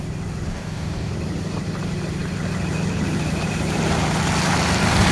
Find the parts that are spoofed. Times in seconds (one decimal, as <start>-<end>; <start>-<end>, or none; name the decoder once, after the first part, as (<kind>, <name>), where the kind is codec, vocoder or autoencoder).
0.5-1.1 (codec, DAC)